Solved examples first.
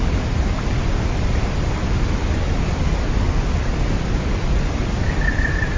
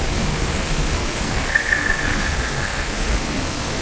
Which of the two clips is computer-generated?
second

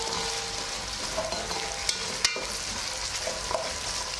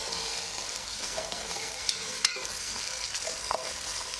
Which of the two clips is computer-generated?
second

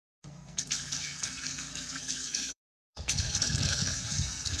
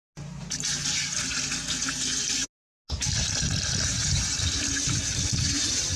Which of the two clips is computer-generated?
first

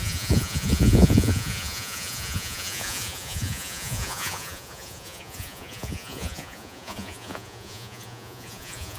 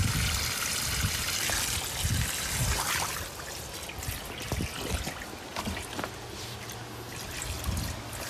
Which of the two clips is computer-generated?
first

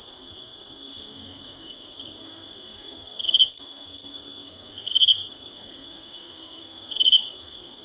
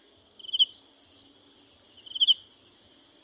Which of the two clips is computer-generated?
first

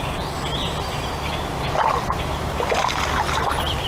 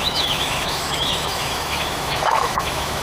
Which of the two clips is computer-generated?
second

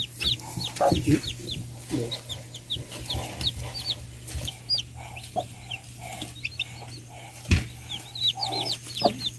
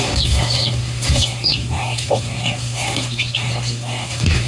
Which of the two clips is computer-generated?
second